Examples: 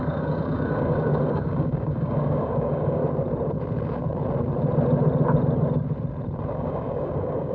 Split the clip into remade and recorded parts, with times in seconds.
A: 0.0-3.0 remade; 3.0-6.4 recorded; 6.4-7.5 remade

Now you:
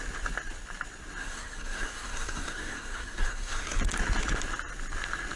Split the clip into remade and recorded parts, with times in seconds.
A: 0.0-1.2 recorded; 1.2-3.8 remade; 3.8-5.4 recorded

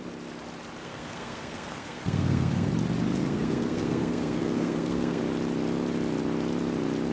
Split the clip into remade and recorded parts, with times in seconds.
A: 0.0-0.8 recorded; 0.8-2.7 remade; 2.7-3.2 recorded; 3.2-5.2 remade; 5.2-7.1 recorded

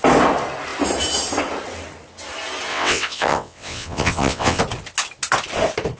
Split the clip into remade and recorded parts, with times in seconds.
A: 0.0-2.7 recorded; 2.7-4.6 remade; 4.6-6.0 recorded

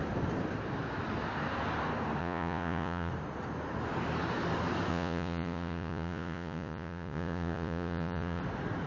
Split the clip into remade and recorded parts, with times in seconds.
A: 0.0-2.2 recorded; 2.2-3.1 remade; 3.1-4.9 recorded; 4.9-8.4 remade; 8.4-8.9 recorded